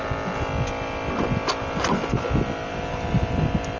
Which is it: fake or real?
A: real